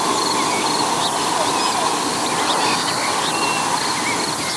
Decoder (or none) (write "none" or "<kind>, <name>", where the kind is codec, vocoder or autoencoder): none